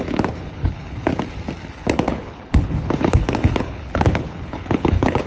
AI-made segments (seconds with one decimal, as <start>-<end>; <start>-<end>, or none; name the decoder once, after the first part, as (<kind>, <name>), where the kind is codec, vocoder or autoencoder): 0.0-1.1 (codec, HILCodec); 1.7-5.3